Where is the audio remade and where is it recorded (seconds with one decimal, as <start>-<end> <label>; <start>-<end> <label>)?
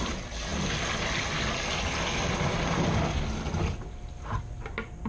0.0-5.1 recorded